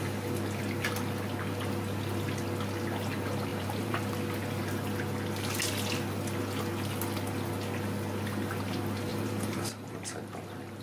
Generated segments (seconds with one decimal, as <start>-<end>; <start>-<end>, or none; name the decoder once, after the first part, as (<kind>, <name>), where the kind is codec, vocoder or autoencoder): 3.5-4.1 (vocoder, BigVGAN v2); 9.1-10.3